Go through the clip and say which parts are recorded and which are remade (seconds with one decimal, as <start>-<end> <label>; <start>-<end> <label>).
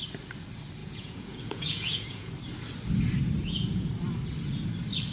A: 0.0-0.8 recorded; 0.8-2.3 remade; 2.3-3.4 recorded; 3.4-3.9 remade; 3.9-5.1 recorded